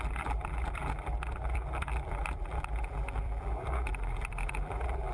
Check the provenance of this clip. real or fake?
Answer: fake